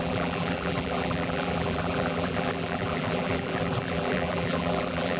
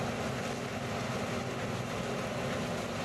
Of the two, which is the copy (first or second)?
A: first